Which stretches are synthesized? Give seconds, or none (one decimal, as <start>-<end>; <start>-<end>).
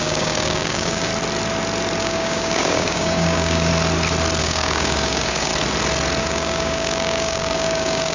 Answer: 0.0-1.1; 2.0-3.7; 4.4-5.5; 6.2-8.1